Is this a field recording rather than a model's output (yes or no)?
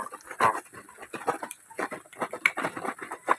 yes